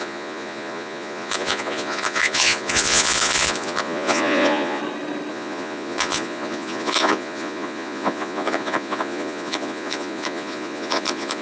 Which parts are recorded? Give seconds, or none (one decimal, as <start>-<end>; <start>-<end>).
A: 4.8-5.3